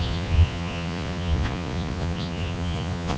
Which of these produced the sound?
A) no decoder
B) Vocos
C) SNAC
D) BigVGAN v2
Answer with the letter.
B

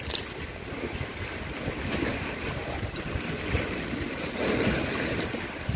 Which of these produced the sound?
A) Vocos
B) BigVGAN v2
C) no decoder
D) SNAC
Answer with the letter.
C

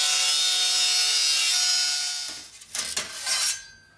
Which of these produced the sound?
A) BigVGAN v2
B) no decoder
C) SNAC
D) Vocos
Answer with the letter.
B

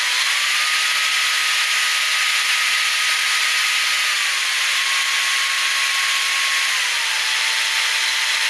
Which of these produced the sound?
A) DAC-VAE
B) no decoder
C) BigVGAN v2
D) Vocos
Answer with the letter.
B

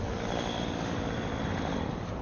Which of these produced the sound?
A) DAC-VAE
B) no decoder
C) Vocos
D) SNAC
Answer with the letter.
B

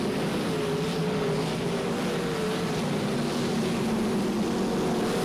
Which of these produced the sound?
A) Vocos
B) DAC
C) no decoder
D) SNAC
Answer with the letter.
C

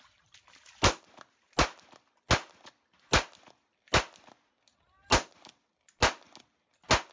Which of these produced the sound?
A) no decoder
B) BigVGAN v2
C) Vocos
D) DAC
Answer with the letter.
A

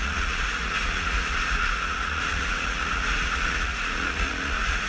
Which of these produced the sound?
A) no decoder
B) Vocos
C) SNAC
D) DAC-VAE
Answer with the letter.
B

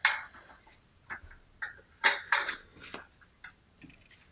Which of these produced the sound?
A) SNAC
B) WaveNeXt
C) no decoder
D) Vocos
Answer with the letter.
C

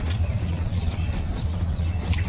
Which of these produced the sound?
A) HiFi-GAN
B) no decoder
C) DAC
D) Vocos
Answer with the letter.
D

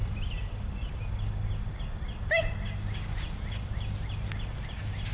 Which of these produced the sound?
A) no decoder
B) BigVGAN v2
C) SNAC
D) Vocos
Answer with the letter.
A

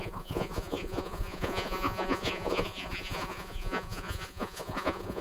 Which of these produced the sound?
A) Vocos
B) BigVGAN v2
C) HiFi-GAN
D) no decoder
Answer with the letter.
A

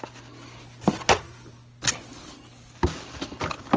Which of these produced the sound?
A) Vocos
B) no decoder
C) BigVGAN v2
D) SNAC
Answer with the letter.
B